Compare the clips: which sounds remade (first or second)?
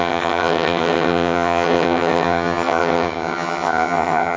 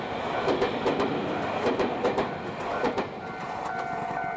first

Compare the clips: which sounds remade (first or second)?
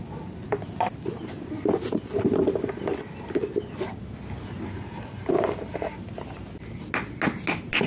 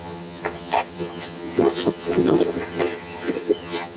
second